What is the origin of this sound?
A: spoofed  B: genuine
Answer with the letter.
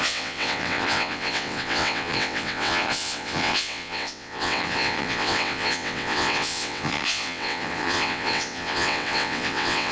A